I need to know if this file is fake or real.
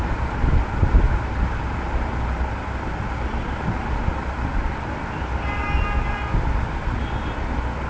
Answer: real